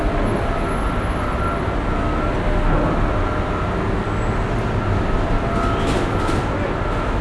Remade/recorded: recorded